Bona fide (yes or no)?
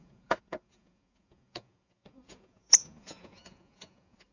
no